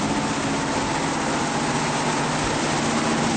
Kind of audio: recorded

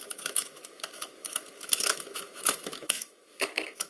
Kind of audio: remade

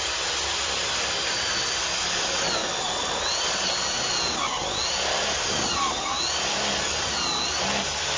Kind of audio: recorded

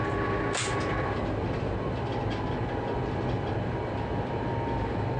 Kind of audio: recorded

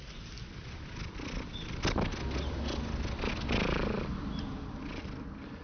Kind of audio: recorded